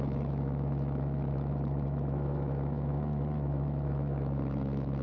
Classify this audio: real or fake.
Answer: fake